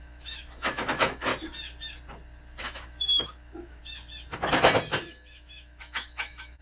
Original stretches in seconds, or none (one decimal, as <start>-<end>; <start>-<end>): 1.3-2.6; 3.8-5.0